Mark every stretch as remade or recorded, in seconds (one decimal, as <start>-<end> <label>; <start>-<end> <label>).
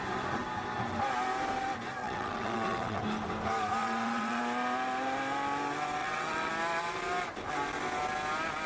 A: 0.0-2.0 recorded; 2.0-3.0 remade; 3.0-3.8 recorded; 3.8-4.4 remade; 4.4-6.0 recorded; 6.0-6.5 remade; 6.5-8.7 recorded